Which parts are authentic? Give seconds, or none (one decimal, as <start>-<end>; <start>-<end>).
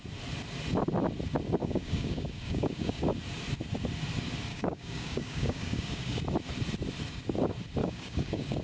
0.0-1.6; 3.1-4.5; 6.2-7.8